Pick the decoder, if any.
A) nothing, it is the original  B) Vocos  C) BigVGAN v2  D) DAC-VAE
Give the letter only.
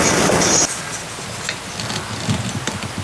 A